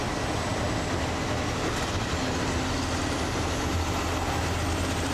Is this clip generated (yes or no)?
no